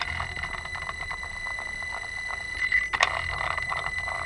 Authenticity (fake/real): real